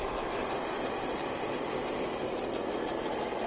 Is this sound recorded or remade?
recorded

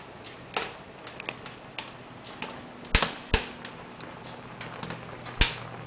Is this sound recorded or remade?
recorded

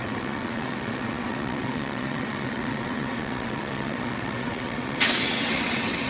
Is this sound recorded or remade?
remade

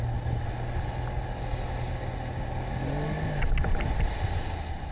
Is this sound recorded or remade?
recorded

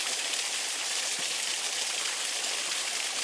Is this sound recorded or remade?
recorded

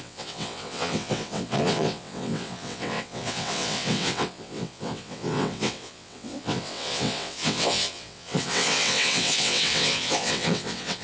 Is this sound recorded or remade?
remade